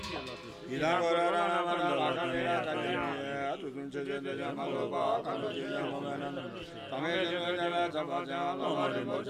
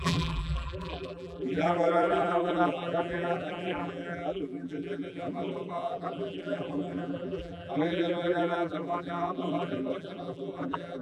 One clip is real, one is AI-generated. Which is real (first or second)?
first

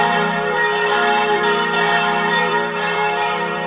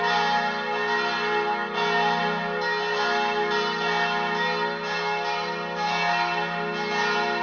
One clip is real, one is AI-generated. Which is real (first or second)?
second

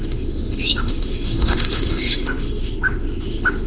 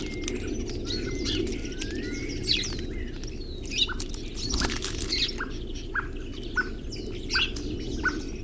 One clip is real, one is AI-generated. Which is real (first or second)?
second